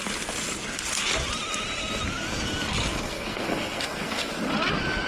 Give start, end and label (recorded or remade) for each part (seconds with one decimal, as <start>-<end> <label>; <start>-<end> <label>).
0.0-2.9 recorded; 2.9-4.3 remade; 4.3-5.1 recorded